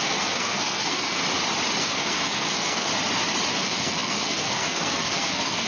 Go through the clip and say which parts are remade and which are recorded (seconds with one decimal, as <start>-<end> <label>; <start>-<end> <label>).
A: 0.0-1.2 remade; 1.2-1.8 recorded; 1.8-2.9 remade; 2.9-3.5 recorded; 3.5-5.7 remade